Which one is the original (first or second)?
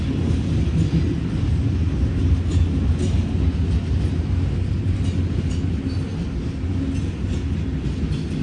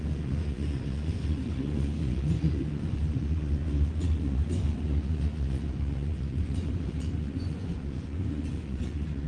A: first